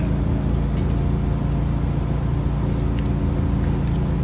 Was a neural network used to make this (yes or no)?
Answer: no